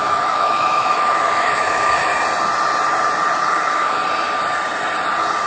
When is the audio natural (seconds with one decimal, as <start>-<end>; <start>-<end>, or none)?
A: 2.1-3.5; 4.0-5.5